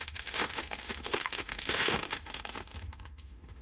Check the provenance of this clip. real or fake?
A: fake